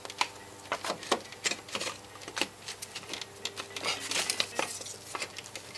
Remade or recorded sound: recorded